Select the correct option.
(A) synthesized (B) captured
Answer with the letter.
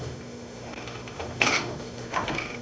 A